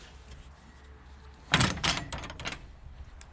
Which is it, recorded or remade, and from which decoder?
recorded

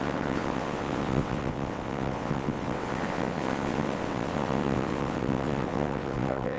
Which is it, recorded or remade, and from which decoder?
remade, vocoder, WaveNeXt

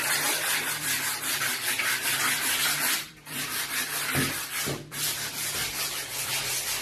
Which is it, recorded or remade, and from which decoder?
remade, vocoder, BigVGAN v2